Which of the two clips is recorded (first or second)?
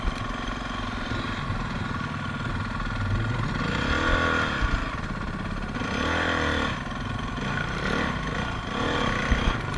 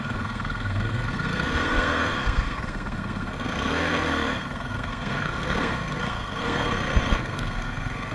first